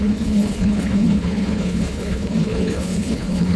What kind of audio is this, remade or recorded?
remade